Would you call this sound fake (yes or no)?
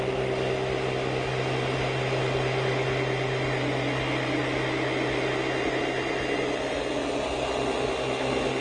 no